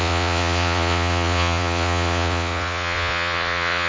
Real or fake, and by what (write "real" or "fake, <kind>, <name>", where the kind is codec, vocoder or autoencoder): fake, vocoder, Vocos